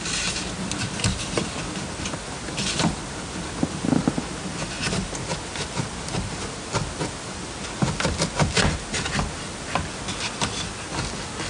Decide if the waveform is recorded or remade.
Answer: recorded